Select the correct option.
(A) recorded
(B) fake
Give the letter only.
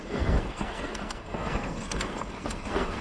B